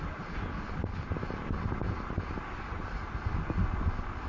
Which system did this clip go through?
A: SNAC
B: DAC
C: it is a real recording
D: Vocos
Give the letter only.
C